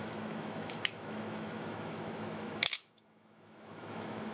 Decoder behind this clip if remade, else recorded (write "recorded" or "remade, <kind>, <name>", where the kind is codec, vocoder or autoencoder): remade, autoencoder, DAC-VAE